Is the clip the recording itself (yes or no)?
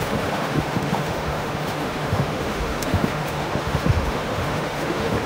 no